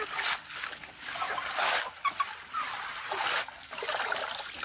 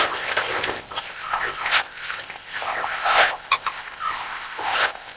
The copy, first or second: second